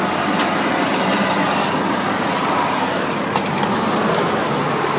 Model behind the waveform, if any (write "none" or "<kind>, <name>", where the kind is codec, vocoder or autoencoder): none